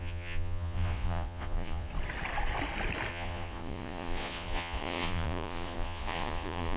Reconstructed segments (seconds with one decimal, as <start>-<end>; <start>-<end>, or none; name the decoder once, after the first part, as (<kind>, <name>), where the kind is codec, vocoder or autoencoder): 0.0-1.9 (vocoder, Vocos); 3.1-6.8